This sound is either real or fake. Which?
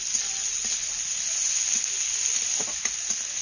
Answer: real